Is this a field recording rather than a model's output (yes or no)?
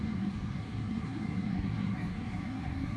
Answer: no